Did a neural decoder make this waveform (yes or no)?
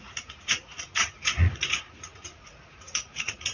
yes